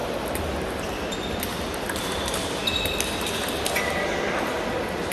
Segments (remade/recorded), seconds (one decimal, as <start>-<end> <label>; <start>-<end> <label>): 0.0-5.1 recorded